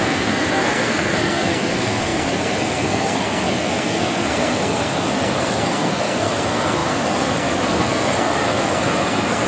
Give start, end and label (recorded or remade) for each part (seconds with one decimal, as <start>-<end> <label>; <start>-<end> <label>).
0.0-9.5 remade